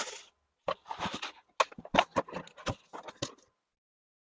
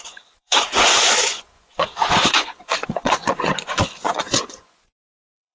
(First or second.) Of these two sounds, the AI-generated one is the second